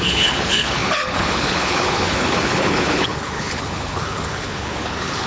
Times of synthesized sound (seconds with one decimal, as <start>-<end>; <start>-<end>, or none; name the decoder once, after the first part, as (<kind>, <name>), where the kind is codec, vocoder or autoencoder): 0.0-5.3 (codec, HILCodec)